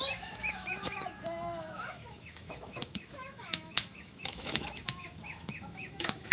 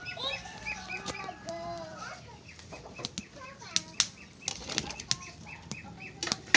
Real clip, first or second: second